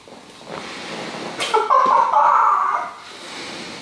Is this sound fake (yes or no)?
no